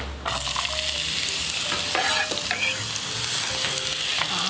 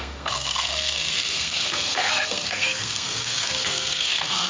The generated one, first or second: second